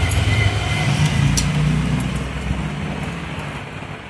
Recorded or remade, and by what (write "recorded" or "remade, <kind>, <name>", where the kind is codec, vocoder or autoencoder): recorded